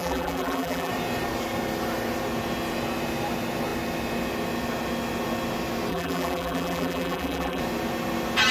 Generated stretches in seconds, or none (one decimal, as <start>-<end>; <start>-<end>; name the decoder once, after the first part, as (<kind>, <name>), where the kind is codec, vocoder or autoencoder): 0.0-0.9 (vocoder, BigVGAN v2); 5.9-7.6